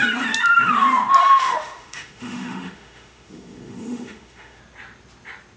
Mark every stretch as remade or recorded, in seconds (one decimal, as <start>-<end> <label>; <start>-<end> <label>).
0.0-1.2 recorded; 1.2-4.6 remade; 4.6-5.6 recorded